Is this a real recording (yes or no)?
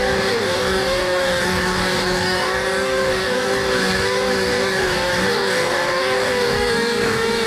no